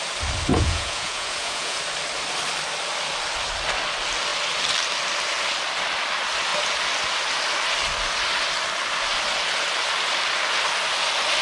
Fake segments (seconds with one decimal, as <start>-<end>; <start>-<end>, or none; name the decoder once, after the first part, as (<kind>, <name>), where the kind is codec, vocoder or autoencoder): 0.5-1.8 (vocoder, Vocos)